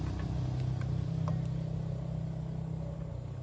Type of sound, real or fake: real